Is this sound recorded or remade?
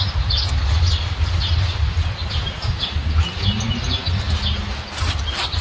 recorded